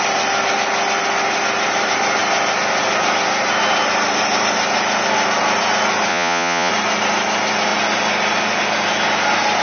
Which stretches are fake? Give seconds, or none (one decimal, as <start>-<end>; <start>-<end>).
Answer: 6.1-6.7